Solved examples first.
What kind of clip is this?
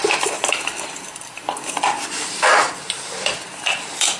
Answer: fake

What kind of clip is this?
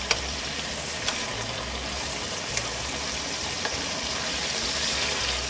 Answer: fake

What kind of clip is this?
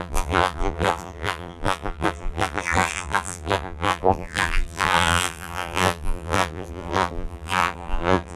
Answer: fake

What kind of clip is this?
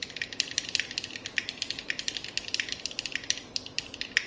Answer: real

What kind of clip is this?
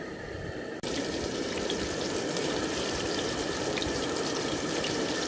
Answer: fake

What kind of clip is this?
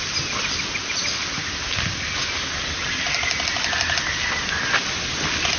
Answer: real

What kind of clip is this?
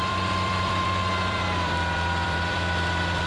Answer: fake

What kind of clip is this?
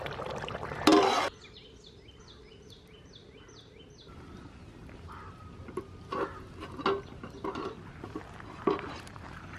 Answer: real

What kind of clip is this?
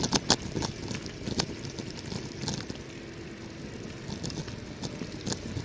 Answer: real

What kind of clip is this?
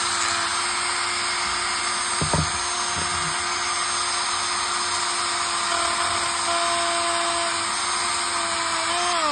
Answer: real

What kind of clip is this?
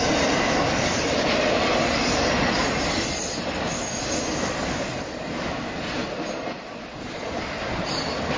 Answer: real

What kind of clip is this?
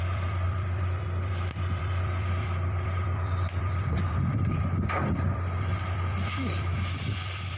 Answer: fake